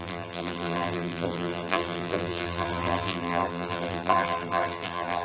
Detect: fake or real fake